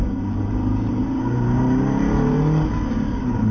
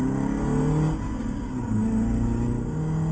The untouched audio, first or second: second